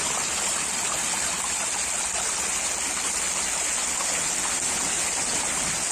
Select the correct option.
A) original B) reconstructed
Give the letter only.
A